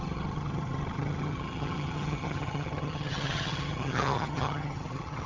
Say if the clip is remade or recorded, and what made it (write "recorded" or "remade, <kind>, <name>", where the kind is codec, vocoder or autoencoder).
remade, vocoder, HiFi-GAN